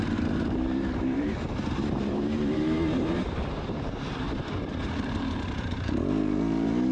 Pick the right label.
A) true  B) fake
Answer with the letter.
B